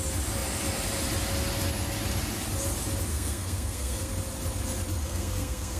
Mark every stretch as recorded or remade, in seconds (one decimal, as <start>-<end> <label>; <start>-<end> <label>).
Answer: 0.0-3.1 recorded; 3.1-4.1 remade; 4.1-5.0 recorded; 5.0-5.8 remade